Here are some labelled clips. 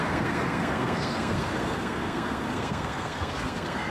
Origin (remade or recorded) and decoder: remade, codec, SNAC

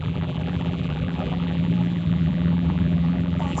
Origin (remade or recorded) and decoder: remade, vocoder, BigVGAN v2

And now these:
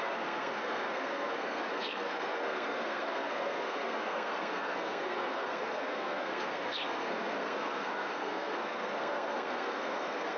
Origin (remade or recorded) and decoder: remade, codec, SNAC